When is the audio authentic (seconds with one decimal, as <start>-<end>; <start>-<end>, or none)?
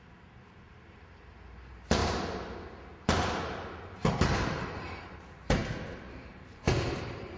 2.0-3.8; 5.6-6.1